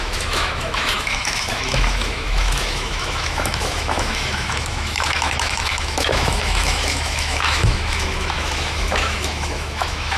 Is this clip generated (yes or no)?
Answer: yes